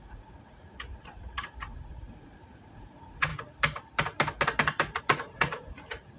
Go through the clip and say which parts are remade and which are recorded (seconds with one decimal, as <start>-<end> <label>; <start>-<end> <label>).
0.0-3.3 remade; 3.3-5.0 recorded; 5.0-6.2 remade